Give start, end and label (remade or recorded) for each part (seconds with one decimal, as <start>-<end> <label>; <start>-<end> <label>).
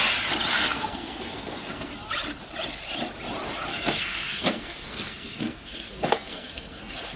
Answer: 0.0-0.5 recorded; 0.5-1.9 remade; 1.9-3.7 recorded; 3.7-7.2 remade